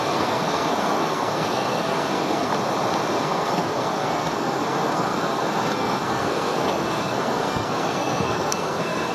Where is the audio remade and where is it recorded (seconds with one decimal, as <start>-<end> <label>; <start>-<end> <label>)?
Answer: 0.0-2.5 remade; 2.5-3.2 recorded; 3.2-9.1 remade